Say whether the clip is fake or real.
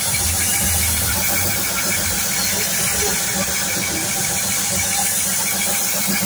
real